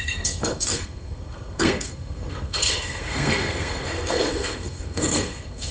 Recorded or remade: remade